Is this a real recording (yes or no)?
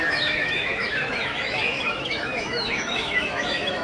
no